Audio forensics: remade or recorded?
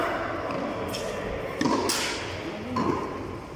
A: recorded